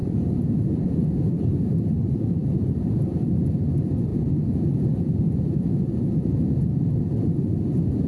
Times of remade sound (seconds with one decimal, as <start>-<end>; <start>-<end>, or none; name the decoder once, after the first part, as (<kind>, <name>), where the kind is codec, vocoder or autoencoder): 0.0-1.3 (vocoder, Vocos); 2.4-3.0; 4.1-6.8